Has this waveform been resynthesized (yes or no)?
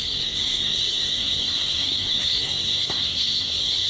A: yes